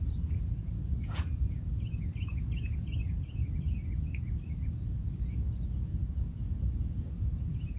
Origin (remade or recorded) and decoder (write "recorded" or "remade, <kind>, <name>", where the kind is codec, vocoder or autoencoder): remade, vocoder, Vocos